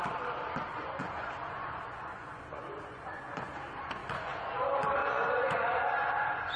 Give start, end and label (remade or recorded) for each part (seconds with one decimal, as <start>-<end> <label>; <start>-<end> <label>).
0.0-0.7 recorded; 0.7-3.5 remade; 3.5-4.0 recorded; 4.0-4.5 remade; 4.5-5.0 recorded; 5.0-6.6 remade